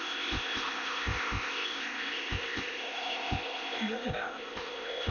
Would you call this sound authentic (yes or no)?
no